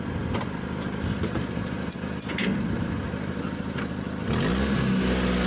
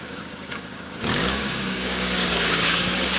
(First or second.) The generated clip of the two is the second